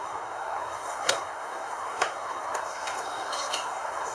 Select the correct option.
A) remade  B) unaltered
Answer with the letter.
A